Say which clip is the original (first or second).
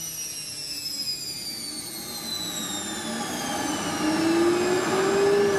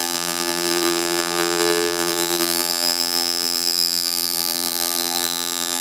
first